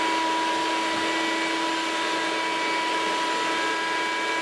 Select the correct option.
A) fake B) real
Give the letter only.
B